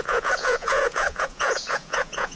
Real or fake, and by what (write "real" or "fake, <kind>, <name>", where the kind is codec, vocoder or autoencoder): fake, vocoder, Vocos